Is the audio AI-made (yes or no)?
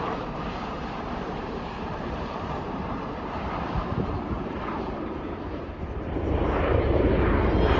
yes